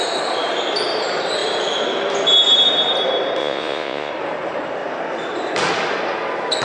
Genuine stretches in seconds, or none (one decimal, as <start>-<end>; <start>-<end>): 0.0-3.4; 4.1-6.6